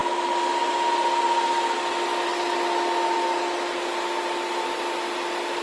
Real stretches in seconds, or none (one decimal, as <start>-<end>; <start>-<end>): 0.0-5.6